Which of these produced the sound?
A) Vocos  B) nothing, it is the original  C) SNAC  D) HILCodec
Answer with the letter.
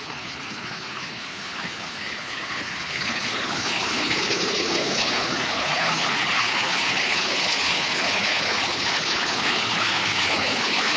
D